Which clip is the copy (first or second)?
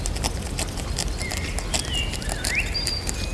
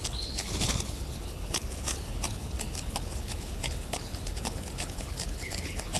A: second